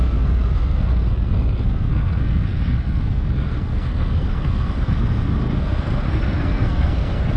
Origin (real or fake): fake